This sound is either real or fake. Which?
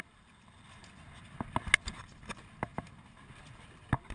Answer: real